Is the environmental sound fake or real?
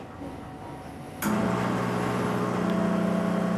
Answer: real